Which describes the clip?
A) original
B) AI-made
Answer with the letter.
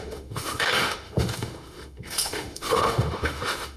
B